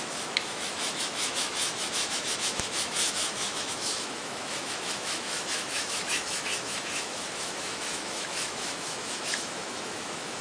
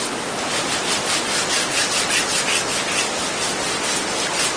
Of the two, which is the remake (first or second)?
first